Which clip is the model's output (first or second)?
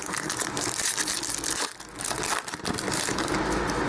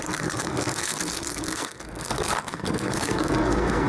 second